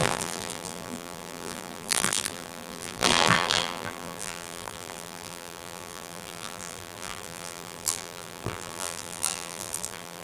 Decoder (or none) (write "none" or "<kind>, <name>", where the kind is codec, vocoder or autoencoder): vocoder, BigVGAN v2